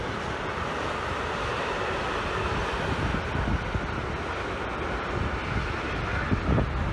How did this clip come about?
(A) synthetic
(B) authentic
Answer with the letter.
B